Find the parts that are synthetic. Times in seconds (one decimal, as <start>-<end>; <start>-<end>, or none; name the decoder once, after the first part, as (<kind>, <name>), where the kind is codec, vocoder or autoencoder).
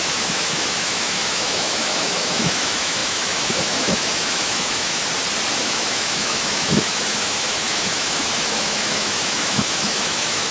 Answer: 0.0-5.0 (autoencoder, DAC-VAE); 5.6-10.5